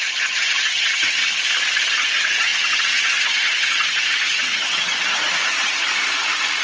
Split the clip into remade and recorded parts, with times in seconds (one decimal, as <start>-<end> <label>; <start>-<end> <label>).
0.0-1.2 remade; 1.2-1.8 recorded; 1.8-5.9 remade; 5.9-6.6 recorded